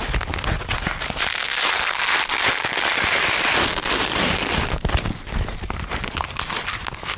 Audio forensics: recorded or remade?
recorded